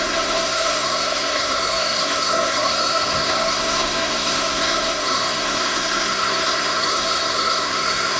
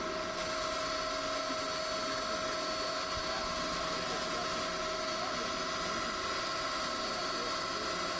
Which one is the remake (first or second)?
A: first